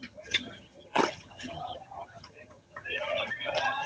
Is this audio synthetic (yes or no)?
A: yes